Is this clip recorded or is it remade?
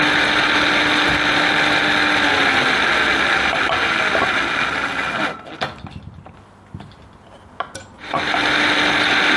recorded